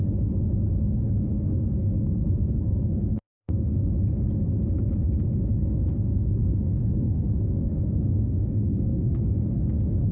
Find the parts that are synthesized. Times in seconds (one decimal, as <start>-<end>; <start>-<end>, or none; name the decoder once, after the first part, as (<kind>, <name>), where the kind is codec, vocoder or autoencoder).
1.3-3.9 (codec, SNAC); 5.6-9.4